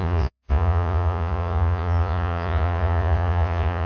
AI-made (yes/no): yes